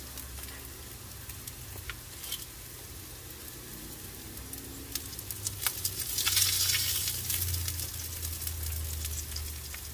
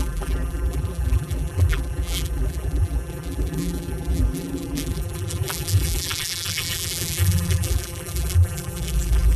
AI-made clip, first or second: second